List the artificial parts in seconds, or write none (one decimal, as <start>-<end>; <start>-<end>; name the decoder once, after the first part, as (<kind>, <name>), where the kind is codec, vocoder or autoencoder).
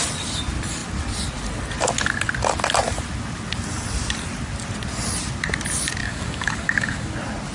6.0-7.1 (codec, DAC)